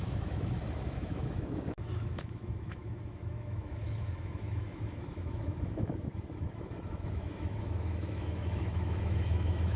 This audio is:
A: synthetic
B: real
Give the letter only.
A